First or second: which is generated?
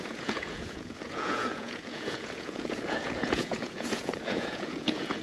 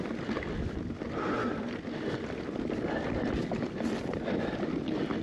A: first